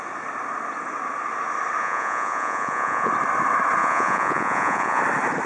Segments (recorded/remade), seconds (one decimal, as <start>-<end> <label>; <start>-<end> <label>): 0.0-1.8 recorded; 1.8-3.1 remade; 3.1-3.8 recorded; 3.8-5.0 remade; 5.0-5.5 recorded